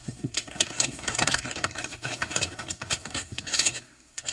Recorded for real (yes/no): no